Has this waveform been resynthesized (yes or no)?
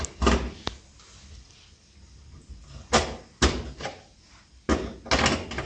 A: no